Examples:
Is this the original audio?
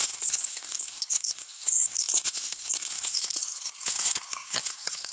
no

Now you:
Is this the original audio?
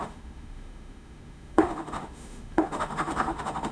no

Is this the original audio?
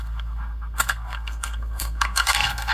no